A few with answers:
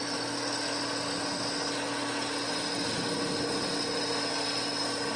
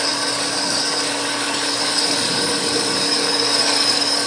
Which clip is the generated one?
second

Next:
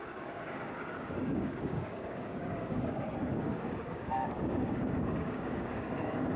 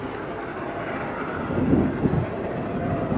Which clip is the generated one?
first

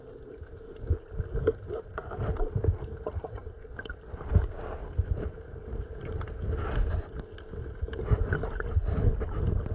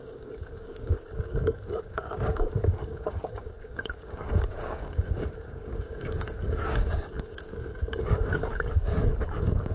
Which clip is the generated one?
second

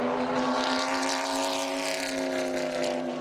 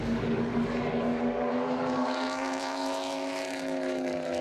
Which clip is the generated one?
second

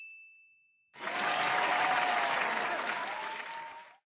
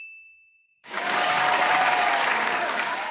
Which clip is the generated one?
second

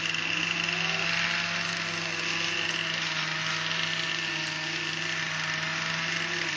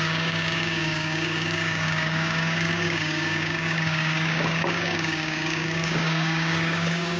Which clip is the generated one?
second